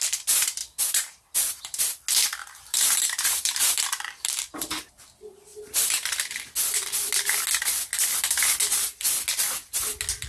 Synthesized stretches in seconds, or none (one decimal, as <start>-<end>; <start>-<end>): 0.6-1.6; 2.4-4.9; 5.5-6.3